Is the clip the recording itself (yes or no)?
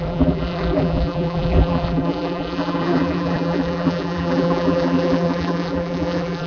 no